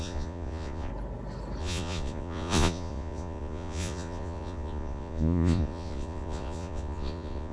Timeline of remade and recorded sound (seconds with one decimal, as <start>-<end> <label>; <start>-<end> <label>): 0.0-0.9 remade; 0.9-1.6 recorded; 1.6-7.5 remade